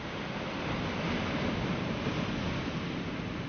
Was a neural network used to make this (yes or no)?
no